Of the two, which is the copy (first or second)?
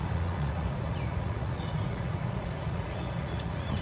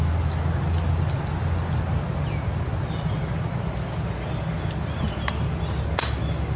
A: first